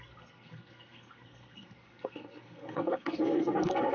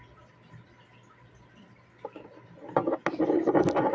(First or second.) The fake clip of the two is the first